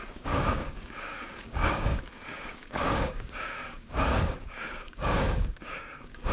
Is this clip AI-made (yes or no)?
yes